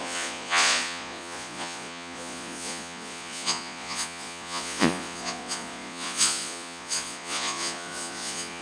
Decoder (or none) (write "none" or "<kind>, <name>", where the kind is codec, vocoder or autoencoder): vocoder, Vocos